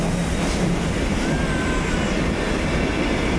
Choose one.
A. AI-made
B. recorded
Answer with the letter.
B